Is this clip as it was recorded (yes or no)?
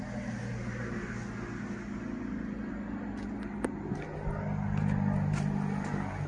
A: yes